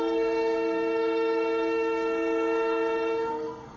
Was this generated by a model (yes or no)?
yes